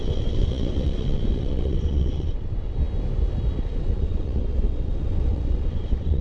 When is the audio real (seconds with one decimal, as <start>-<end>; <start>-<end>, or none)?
2.8-3.6